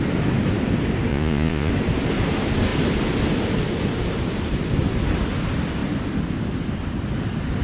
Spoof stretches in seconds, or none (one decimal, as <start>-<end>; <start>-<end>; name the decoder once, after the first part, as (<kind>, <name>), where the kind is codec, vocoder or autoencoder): 1.1-1.7 (vocoder, Vocos)